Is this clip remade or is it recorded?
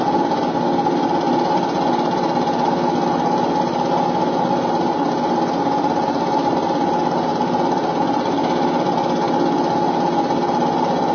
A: recorded